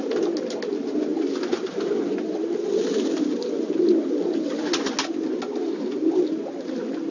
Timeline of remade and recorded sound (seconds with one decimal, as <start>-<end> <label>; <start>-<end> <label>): 0.0-7.1 recorded